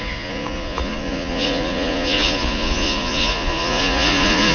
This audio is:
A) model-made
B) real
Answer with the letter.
A